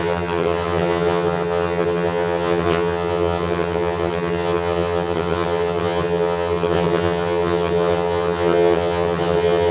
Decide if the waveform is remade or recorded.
remade